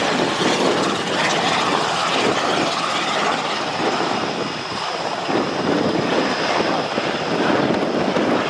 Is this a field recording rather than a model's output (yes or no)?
yes